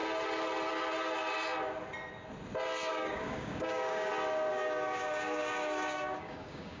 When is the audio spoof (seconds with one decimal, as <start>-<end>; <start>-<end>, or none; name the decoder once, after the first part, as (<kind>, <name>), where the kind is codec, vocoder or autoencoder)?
2.9-4.1 (codec, DAC); 4.5-6.8